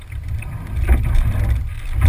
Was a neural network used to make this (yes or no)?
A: yes